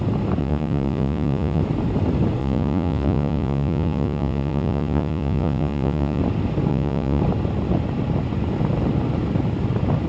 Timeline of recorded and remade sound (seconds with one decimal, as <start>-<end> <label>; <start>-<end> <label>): 0.0-0.4 recorded; 0.4-1.6 remade; 1.6-2.4 recorded; 2.4-6.2 remade; 6.2-6.7 recorded; 6.7-7.2 remade; 7.2-10.1 recorded